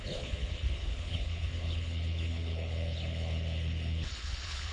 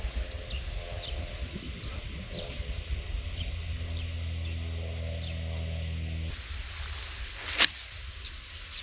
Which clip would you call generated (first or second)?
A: first